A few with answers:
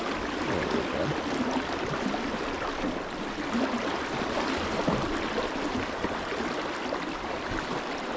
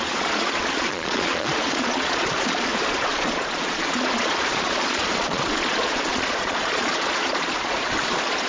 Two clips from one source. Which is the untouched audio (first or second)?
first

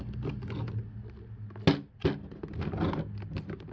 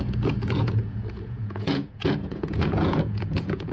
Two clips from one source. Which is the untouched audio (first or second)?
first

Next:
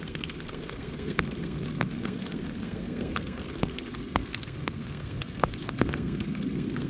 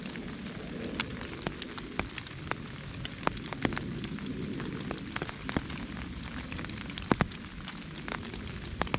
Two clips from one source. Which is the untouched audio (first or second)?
second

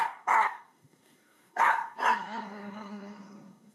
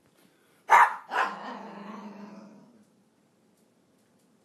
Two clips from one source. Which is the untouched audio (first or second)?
second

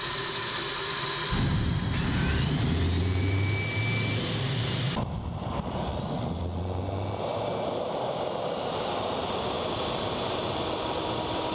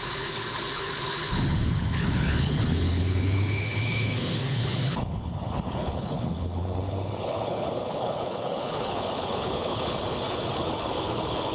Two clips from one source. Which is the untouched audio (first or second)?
first